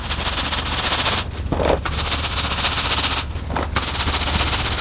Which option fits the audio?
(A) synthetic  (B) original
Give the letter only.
B